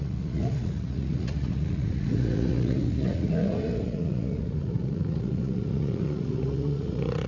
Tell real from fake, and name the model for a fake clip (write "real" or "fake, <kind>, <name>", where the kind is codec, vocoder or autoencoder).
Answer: fake, vocoder, Vocos